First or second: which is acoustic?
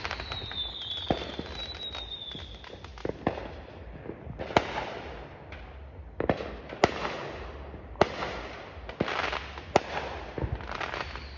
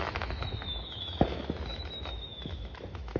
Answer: first